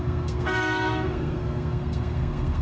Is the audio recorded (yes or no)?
no